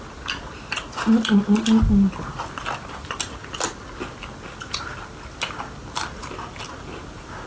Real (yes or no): yes